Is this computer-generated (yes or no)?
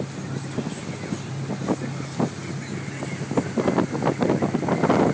no